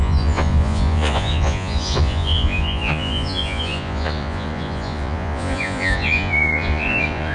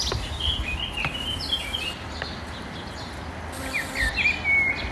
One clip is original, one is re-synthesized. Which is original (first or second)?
second